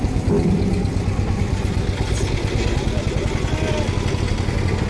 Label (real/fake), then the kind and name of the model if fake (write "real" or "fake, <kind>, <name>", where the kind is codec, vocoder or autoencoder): real